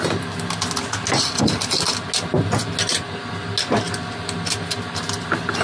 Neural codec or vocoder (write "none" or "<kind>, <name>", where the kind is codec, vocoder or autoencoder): none